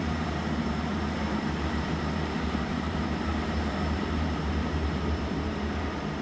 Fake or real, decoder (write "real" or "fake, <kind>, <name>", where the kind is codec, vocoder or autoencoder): fake, vocoder, BigVGAN v2